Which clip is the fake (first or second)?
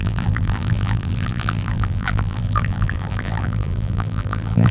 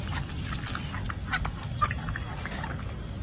first